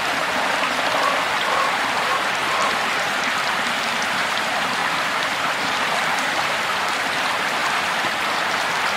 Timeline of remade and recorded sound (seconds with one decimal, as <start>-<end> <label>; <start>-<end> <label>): 0.0-7.6 recorded; 7.6-8.1 remade; 8.1-9.0 recorded